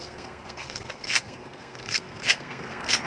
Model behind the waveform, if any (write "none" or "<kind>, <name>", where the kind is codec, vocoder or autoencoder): codec, SNAC